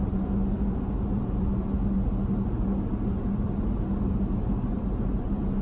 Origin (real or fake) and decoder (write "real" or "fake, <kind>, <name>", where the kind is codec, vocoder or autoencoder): real